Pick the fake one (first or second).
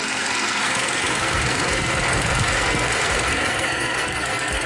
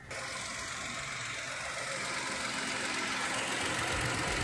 first